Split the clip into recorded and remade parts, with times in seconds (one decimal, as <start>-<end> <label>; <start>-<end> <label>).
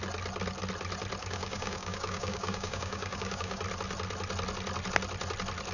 0.0-1.2 recorded; 1.2-3.6 remade; 3.6-5.7 recorded